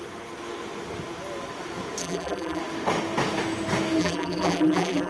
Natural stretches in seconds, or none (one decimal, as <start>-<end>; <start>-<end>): 0.0-2.0; 2.6-4.0

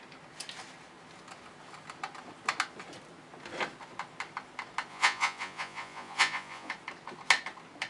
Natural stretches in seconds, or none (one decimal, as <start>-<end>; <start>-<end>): 0.0-4.9; 6.7-7.9

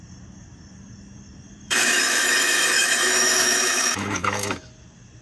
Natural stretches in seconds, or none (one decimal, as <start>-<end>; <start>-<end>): 0.0-1.6; 4.7-5.2